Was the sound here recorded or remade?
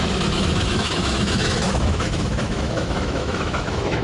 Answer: remade